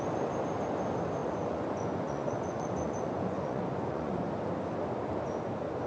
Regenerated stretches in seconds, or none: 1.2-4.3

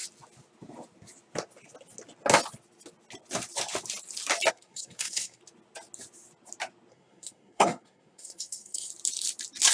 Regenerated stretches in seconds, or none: 4.5-5.4; 6.9-8.9

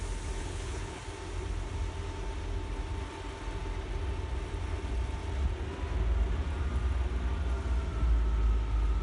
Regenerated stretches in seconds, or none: 0.4-1.0

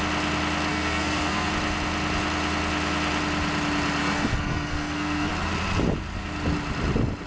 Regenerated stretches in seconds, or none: 0.7-1.5; 4.0-5.3

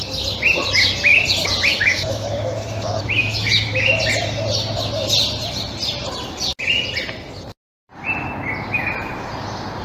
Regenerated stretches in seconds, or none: 1.7-4.0

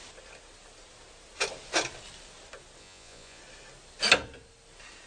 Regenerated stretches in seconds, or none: 2.8-3.4